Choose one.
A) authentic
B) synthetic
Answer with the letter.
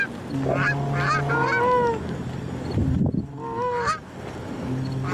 A